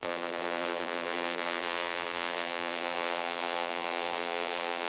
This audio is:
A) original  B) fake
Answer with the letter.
B